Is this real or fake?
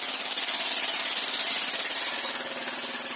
real